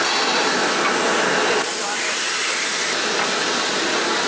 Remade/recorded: recorded